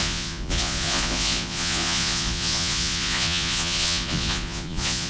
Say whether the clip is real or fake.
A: fake